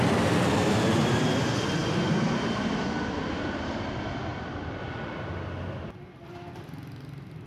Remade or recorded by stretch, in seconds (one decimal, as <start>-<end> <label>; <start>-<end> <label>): 0.0-7.5 recorded